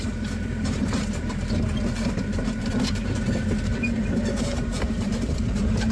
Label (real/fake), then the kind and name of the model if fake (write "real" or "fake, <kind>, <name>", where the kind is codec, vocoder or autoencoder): fake, vocoder, BigVGAN v2